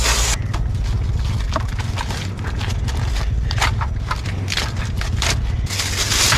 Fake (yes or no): no